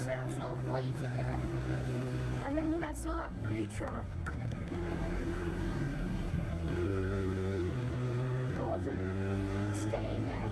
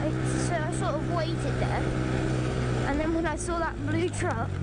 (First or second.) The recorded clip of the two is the second